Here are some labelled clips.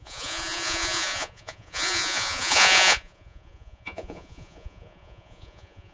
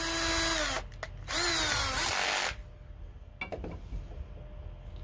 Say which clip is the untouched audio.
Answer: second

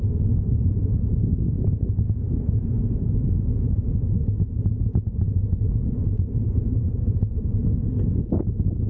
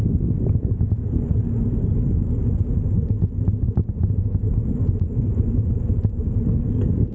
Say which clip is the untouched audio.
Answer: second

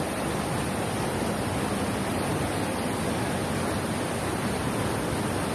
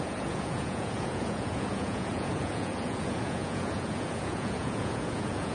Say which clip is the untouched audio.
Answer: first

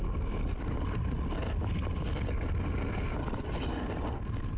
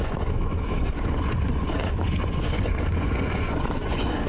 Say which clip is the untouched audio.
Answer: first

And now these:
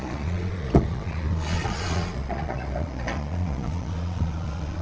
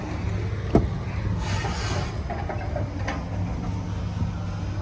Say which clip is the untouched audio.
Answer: second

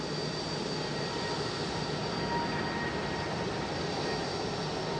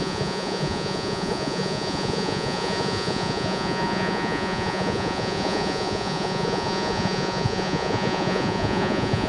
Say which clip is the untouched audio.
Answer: first